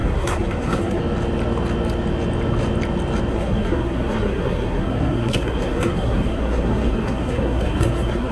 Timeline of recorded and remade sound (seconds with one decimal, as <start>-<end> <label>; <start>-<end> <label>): 0.0-1.0 remade; 1.0-3.3 recorded; 3.3-8.3 remade